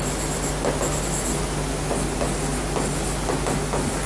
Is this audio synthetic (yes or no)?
no